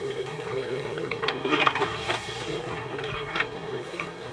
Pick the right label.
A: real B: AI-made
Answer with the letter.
B